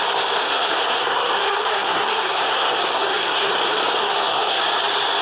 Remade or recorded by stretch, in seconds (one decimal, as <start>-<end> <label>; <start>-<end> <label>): 0.0-0.4 recorded; 0.4-3.5 remade; 3.5-4.0 recorded; 4.0-4.6 remade; 4.6-5.2 recorded